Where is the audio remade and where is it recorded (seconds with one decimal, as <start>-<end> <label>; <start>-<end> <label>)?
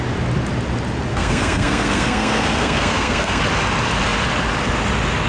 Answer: 0.0-1.1 recorded; 1.1-3.4 remade; 3.4-5.3 recorded